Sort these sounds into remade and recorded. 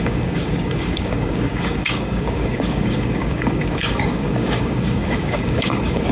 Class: remade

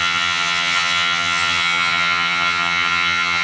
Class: remade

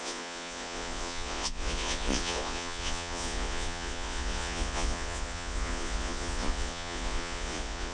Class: remade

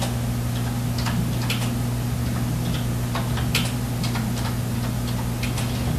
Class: recorded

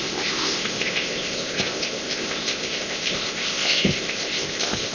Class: remade